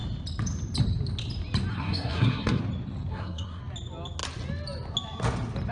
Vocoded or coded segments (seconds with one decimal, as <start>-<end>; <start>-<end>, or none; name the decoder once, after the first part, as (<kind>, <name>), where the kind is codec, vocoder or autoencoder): 1.7-2.6 (codec, SNAC); 3.1-3.6